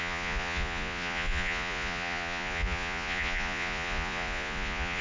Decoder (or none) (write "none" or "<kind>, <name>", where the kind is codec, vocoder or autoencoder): vocoder, Vocos